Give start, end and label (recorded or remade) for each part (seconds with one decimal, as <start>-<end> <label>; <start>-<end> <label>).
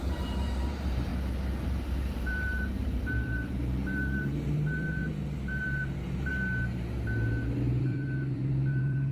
0.0-1.1 remade; 1.1-1.6 recorded; 1.6-6.3 remade; 6.3-7.8 recorded; 7.8-9.1 remade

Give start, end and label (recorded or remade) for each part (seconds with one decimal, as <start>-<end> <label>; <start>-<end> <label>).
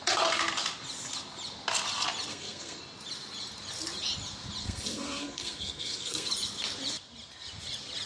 0.0-2.3 recorded; 2.3-2.8 remade; 2.8-4.6 recorded; 4.6-6.3 remade; 6.3-8.1 recorded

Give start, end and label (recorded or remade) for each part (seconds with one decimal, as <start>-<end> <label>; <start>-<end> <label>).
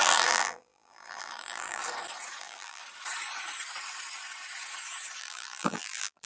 0.0-1.8 remade; 1.8-2.4 recorded; 2.4-2.8 remade; 2.8-5.2 recorded; 5.2-6.3 remade